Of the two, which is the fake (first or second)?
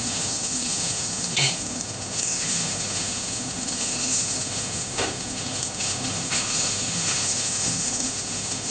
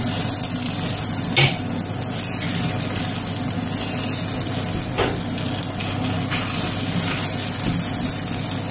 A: first